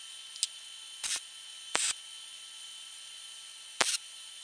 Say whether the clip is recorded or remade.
recorded